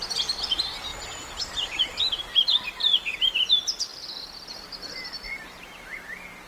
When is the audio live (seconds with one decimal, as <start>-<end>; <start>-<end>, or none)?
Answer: 0.0-6.5